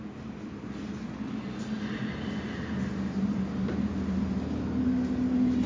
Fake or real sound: real